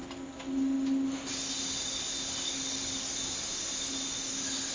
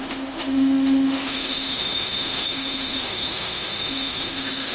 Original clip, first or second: first